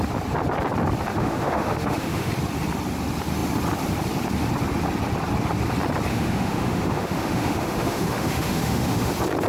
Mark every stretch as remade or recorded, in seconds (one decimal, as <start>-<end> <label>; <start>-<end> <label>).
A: 0.0-1.1 recorded; 1.1-2.3 remade; 2.3-6.1 recorded; 6.1-9.1 remade; 9.1-9.5 recorded